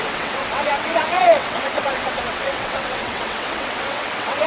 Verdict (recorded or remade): remade